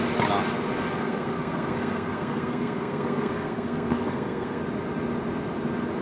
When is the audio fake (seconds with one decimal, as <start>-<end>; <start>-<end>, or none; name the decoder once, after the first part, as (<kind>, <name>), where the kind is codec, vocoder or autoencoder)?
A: 1.0-4.6 (codec, SNAC)